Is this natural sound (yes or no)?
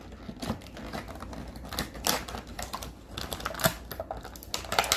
yes